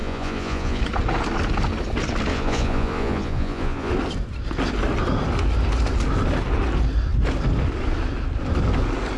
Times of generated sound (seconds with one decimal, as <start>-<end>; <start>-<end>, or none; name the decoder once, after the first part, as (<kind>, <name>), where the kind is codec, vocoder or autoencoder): 0.0-0.8 (vocoder, Vocos); 2.3-3.9